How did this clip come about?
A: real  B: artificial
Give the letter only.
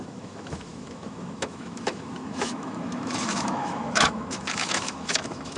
B